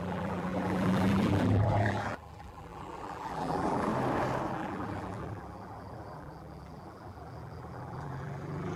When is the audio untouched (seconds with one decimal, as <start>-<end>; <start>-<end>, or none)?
3.9-4.5